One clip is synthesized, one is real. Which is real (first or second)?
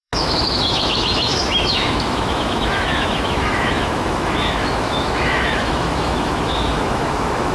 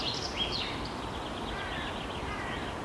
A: second